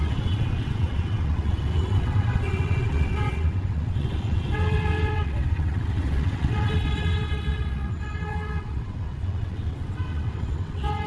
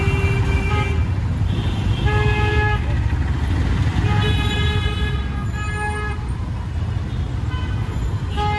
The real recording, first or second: second